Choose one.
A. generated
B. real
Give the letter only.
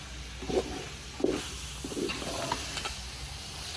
B